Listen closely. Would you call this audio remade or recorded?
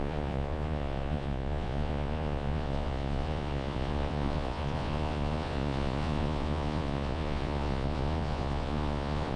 remade